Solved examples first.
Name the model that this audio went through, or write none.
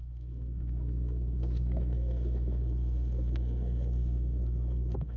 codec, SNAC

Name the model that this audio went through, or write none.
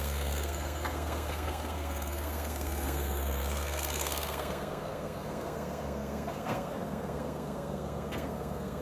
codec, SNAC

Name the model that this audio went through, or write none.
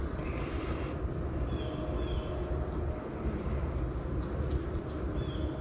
none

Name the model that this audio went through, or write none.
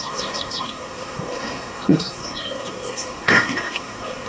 codec, SNAC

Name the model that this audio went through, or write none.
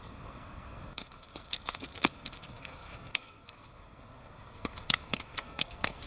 codec, SNAC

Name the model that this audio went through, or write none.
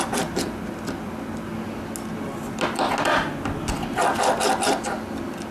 none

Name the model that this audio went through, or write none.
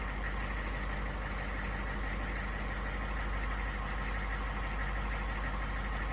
none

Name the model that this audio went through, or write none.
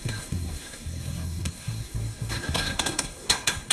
codec, SNAC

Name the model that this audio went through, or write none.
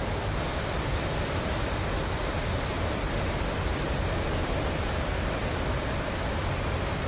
none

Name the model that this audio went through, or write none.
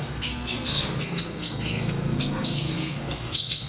codec, SNAC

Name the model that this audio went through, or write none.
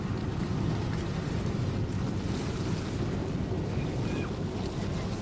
none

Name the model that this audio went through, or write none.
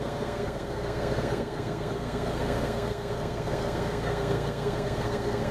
codec, SNAC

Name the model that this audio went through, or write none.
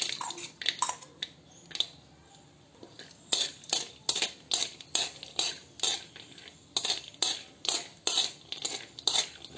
none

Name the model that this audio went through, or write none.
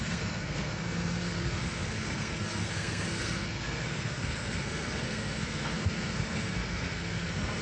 codec, SNAC